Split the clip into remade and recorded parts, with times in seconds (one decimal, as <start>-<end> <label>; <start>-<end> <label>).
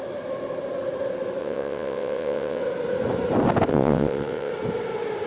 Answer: 0.0-1.4 recorded; 1.4-2.6 remade; 2.6-3.7 recorded; 3.7-4.5 remade; 4.5-5.3 recorded